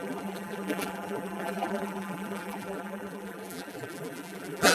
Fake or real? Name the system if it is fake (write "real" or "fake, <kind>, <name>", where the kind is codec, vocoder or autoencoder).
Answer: fake, vocoder, BigVGAN v2